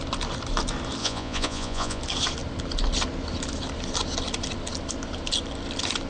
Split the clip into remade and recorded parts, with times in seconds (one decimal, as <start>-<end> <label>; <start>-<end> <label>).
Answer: 0.0-1.0 recorded; 1.0-2.0 remade; 2.0-6.1 recorded